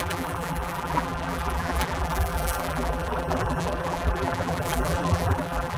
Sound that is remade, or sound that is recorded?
remade